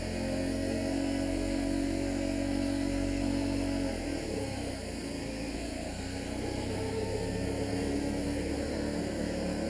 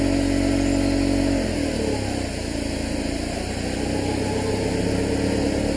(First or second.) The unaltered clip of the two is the second